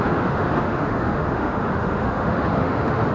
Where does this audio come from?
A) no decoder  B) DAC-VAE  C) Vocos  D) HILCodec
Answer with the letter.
B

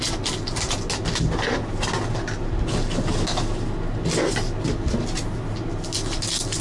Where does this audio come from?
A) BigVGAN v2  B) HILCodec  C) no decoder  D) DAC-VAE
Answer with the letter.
C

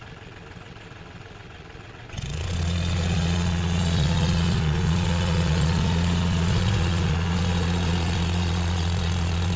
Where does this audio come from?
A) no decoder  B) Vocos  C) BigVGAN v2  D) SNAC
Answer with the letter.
B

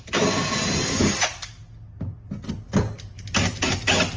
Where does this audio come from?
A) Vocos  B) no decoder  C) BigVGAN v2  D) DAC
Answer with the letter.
B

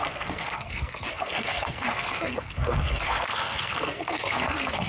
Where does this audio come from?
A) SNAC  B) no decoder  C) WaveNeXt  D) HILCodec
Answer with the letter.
A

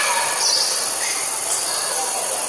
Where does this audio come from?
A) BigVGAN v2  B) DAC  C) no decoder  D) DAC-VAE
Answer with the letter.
C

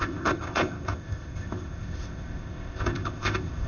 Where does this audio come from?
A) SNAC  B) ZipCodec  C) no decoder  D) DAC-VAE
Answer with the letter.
B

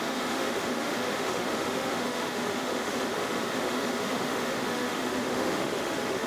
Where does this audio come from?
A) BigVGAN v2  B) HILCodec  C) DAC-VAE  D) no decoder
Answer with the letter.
C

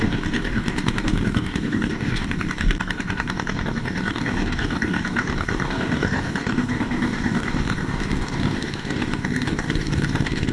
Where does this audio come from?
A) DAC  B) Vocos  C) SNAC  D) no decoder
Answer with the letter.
A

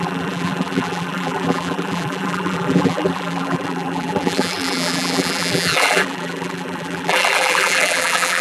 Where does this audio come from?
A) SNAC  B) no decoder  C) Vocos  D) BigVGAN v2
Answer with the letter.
D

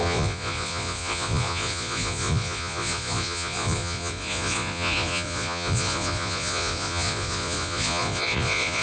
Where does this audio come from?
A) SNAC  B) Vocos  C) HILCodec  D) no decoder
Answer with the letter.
B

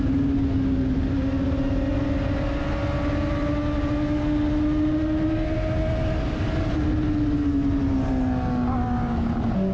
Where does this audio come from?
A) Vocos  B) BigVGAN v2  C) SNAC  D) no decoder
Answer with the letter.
D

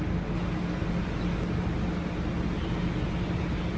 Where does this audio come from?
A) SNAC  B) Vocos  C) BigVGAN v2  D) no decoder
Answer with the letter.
D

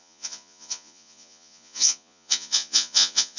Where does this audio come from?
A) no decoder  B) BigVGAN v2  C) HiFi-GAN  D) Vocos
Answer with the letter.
D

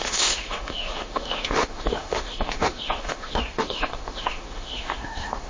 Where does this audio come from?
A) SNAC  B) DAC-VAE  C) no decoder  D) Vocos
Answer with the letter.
B